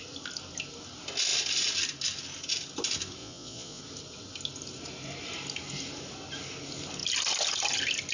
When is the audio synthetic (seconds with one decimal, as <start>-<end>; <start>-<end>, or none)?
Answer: 3.2-3.8